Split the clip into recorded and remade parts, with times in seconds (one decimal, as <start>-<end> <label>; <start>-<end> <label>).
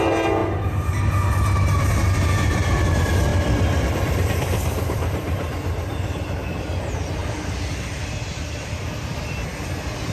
0.0-3.3 recorded; 3.3-6.6 remade; 6.6-10.1 recorded